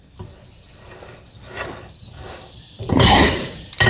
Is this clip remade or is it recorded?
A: remade